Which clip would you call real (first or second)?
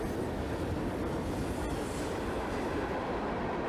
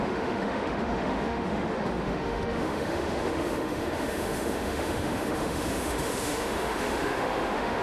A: first